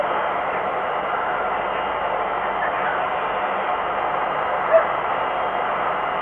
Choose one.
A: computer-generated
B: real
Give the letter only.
B